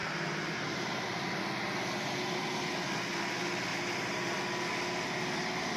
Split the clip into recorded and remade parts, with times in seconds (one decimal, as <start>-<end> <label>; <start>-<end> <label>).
0.0-1.4 remade; 1.4-3.7 recorded; 3.7-4.4 remade; 4.4-5.8 recorded